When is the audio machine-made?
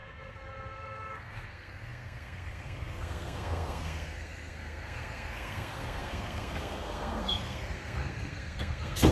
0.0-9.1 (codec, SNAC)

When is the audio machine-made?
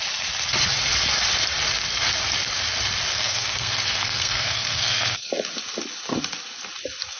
3.1-5.3 (codec, SNAC)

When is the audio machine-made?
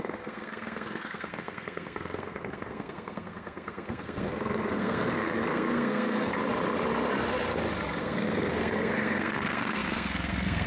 0.0-6.4 (codec, SNAC); 8.0-10.7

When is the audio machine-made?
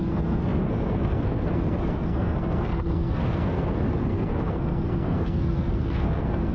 0.0-6.5 (codec, SNAC)